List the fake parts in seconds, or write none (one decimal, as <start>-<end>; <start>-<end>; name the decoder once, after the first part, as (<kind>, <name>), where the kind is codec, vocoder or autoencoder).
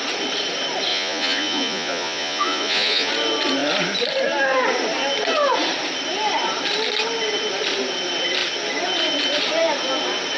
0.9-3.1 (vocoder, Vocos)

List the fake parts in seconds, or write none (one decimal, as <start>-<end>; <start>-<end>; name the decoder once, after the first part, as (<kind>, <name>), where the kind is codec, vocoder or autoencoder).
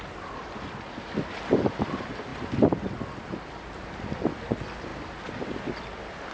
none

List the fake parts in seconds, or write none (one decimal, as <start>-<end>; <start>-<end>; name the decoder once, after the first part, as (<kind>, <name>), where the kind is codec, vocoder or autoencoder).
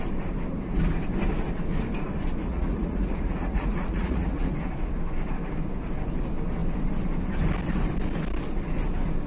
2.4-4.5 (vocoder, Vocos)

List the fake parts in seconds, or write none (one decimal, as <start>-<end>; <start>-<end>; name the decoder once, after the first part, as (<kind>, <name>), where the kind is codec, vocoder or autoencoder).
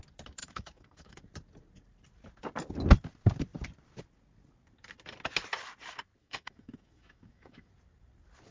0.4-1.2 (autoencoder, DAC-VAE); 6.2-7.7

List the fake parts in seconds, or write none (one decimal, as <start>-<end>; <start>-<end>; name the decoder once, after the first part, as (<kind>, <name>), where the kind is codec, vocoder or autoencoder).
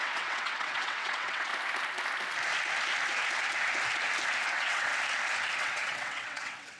0.0-1.5 (vocoder, WaveNeXt); 4.5-4.9; 5.6-6.8